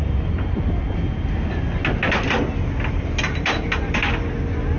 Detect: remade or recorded recorded